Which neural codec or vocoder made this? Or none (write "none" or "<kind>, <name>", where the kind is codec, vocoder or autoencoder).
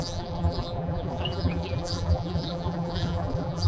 vocoder, BigVGAN v2